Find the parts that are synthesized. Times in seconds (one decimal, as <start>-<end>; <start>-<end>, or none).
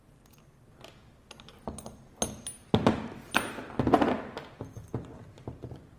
none